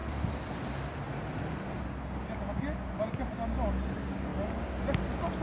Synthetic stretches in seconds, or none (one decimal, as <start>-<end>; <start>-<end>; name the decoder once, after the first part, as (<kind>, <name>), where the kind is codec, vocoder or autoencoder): none